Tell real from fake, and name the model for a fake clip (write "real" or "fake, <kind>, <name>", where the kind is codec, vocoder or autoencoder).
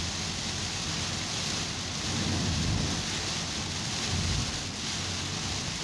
real